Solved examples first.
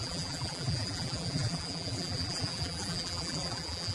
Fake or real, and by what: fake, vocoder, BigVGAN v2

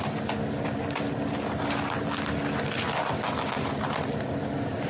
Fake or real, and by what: real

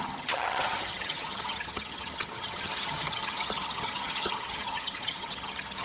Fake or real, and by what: fake, vocoder, HiFi-GAN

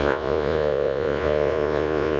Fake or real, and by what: fake, vocoder, Vocos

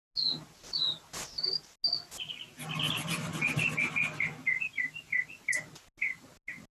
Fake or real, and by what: real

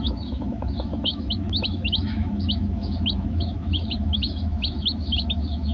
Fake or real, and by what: fake, autoencoder, DAC-VAE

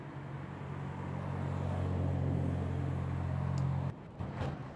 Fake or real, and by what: real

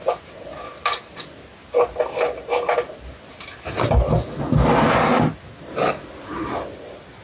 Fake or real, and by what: real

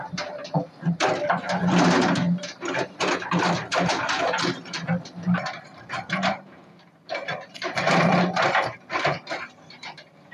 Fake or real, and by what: fake, vocoder, BigVGAN v2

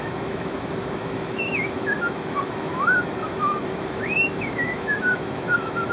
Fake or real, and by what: fake, autoencoder, DAC-VAE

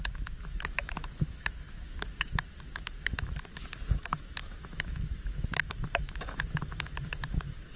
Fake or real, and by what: fake, autoencoder, DAC-VAE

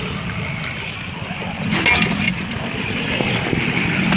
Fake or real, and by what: real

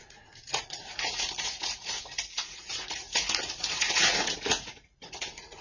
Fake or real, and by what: fake, vocoder, Vocos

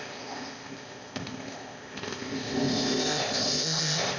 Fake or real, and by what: fake, codec, ZipCodec